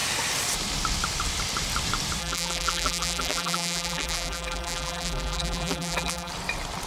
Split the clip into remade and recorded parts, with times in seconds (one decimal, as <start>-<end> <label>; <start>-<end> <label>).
0.0-2.2 recorded; 2.2-6.3 remade; 6.3-6.9 recorded